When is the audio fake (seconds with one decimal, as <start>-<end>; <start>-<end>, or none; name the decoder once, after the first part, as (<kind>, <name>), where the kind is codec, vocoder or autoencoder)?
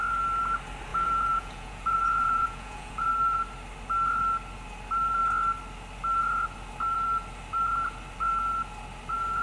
0.9-3.1 (vocoder, Vocos)